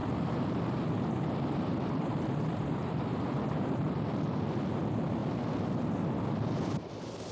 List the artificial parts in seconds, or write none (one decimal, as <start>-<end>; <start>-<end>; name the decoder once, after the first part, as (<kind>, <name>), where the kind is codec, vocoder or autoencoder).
0.0-4.4 (vocoder, BigVGAN v2)